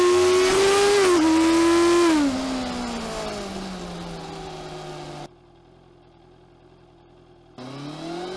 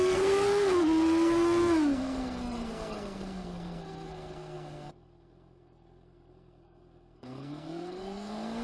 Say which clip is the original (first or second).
first